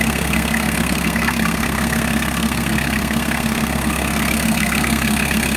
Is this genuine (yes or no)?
no